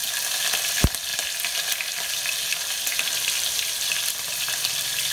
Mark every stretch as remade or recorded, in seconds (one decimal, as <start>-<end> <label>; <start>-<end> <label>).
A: 0.0-0.7 recorded; 0.7-1.1 remade; 1.1-1.8 recorded; 1.8-5.1 remade